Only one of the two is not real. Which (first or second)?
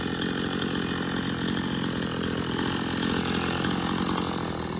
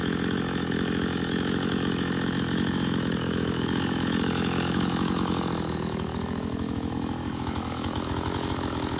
second